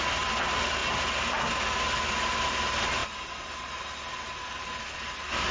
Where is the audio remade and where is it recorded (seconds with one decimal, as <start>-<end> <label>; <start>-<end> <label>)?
0.0-5.5 recorded